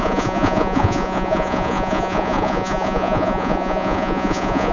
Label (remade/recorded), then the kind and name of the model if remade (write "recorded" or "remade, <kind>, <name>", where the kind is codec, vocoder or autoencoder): remade, vocoder, Vocos